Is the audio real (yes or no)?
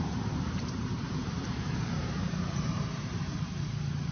no